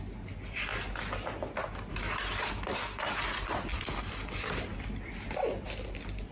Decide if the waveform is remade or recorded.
recorded